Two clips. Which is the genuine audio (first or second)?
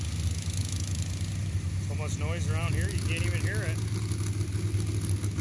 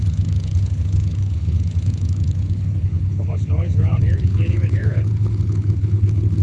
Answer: first